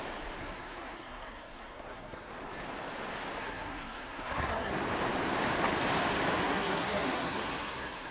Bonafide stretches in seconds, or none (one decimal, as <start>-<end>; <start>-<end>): 0.0-0.4; 2.3-3.4; 4.7-6.4